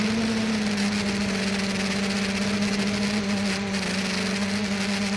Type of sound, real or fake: real